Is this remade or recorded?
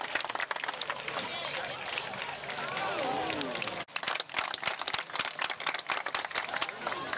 recorded